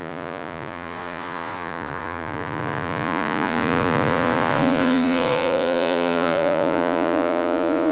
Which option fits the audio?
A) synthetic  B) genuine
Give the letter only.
A